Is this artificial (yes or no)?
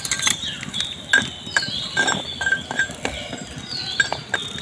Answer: no